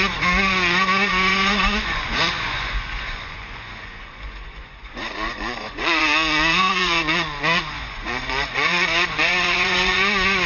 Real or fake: fake